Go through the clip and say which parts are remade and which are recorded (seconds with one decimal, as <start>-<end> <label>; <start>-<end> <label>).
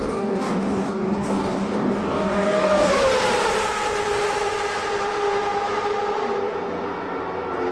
0.0-2.9 remade; 2.9-7.7 recorded